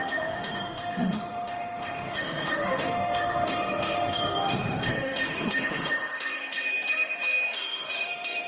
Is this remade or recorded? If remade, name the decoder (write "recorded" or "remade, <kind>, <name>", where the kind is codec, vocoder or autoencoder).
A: remade, autoencoder, DAC-VAE